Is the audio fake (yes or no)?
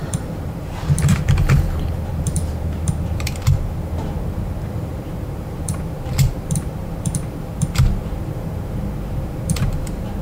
yes